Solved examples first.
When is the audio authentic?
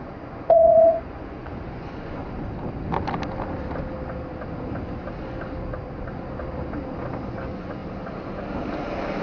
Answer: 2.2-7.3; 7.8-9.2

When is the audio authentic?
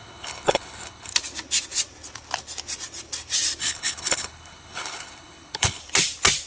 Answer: 1.1-3.6; 5.8-6.5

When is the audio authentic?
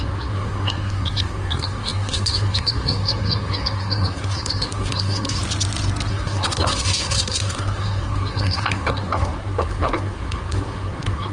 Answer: 5.4-6.1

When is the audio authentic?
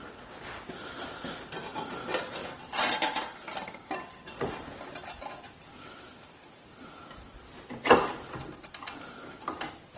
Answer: 0.0-10.0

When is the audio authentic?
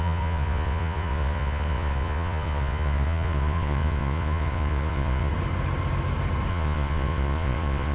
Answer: 5.3-6.5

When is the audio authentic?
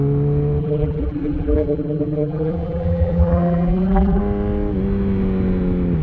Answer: 0.0-0.6; 4.2-6.0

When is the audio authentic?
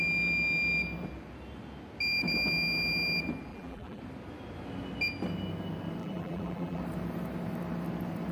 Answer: 0.0-3.5; 4.0-6.0; 6.8-8.3